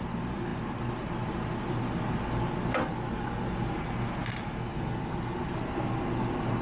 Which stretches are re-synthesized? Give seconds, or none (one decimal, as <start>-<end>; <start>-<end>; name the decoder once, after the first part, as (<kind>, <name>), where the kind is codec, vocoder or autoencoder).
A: 0.5-2.0 (vocoder, BigVGAN v2); 4.2-5.5